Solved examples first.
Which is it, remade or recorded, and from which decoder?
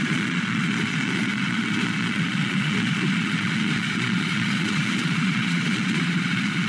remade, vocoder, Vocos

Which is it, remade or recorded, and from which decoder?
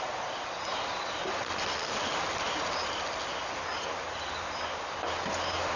recorded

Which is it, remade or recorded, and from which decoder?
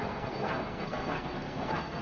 remade, codec, SNAC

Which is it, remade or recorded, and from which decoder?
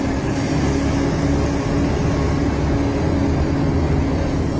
recorded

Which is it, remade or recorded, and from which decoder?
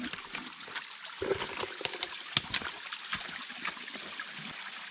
recorded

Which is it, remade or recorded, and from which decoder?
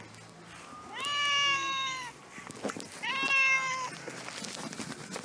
recorded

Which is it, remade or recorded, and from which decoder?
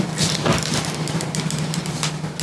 recorded